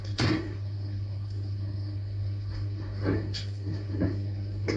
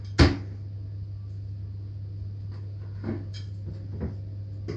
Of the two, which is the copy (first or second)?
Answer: first